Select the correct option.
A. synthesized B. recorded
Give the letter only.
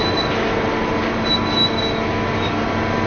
B